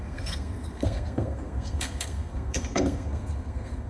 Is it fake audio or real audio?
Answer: fake